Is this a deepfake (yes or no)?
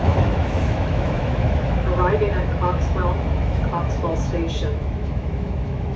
yes